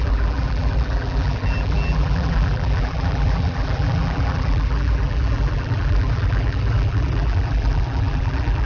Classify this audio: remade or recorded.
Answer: remade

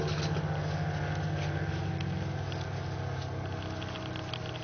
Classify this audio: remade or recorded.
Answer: recorded